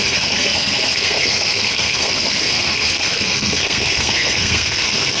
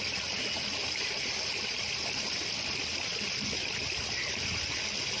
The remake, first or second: first